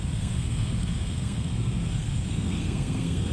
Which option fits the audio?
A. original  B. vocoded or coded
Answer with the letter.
B